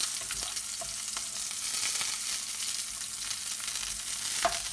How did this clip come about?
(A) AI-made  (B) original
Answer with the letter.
B